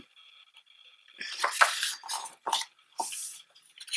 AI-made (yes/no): no